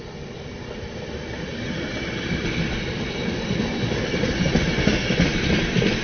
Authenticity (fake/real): real